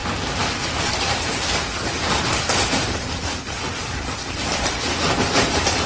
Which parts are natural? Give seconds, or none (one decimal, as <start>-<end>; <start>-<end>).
0.0-5.9